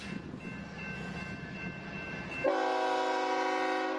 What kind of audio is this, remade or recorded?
recorded